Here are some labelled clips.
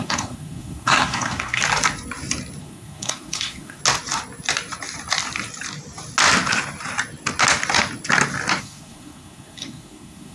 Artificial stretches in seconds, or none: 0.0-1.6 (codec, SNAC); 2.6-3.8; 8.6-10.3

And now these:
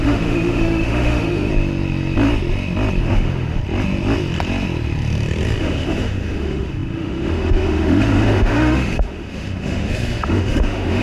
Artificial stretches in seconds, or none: 0.0-1.5 (autoencoder, DAC-VAE); 3.0-3.6; 5.6-11.0